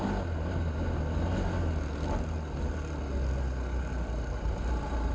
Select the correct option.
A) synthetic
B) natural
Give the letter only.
B